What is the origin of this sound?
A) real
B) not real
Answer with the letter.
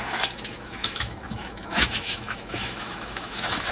B